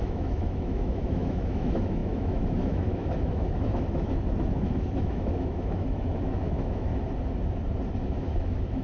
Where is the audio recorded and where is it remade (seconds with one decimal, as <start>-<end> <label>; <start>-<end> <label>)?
0.0-6.9 remade; 6.9-8.0 recorded; 8.0-8.8 remade

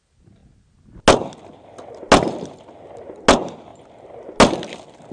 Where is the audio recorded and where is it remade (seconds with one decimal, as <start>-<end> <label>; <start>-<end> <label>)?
0.0-5.1 recorded

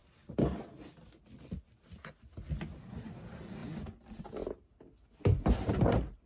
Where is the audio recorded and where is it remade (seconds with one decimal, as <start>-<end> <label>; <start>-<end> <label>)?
0.0-6.3 recorded

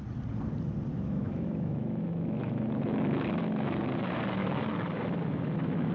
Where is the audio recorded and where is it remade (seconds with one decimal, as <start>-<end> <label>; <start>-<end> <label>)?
0.0-0.9 recorded; 0.9-3.9 remade; 3.9-4.4 recorded; 4.4-5.9 remade

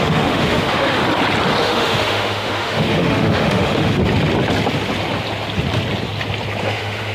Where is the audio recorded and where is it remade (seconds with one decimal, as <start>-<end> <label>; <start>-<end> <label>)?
0.0-1.0 remade; 1.0-1.6 recorded; 1.6-4.0 remade; 4.0-6.6 recorded; 6.6-7.1 remade

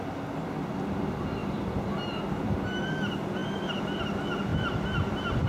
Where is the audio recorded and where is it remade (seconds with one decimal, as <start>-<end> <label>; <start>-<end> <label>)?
0.0-5.5 recorded

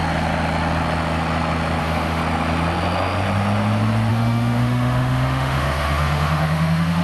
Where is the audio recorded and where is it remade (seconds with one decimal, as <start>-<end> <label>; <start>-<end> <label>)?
0.0-1.8 recorded; 1.8-2.2 remade; 2.2-4.1 recorded; 4.1-7.0 remade

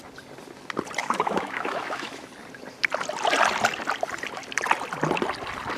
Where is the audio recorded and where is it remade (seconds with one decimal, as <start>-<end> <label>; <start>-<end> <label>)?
0.0-1.0 recorded; 1.0-2.3 remade; 2.3-5.8 recorded